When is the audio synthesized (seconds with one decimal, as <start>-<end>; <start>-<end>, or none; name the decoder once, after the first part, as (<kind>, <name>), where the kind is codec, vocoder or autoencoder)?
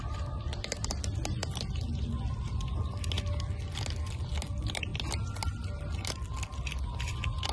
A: none